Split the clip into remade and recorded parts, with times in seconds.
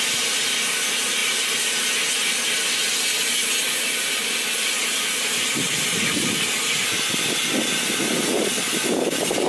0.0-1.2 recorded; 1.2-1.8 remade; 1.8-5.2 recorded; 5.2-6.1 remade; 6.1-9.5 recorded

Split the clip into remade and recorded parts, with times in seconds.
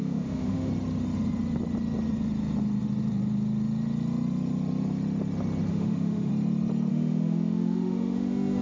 0.0-0.7 remade; 0.7-5.7 recorded; 5.7-6.3 remade; 6.3-6.9 recorded; 6.9-8.6 remade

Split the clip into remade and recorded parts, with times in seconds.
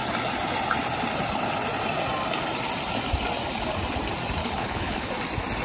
0.0-4.4 recorded; 4.4-5.1 remade; 5.1-5.6 recorded